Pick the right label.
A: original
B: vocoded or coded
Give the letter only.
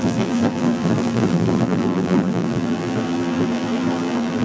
B